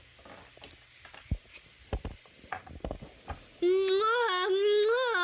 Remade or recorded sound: recorded